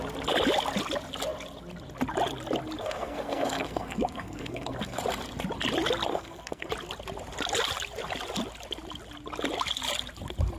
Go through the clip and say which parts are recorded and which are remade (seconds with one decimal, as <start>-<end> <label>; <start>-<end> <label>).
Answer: 0.0-2.8 recorded; 2.8-5.0 remade; 5.0-6.1 recorded; 6.1-6.7 remade; 6.7-10.6 recorded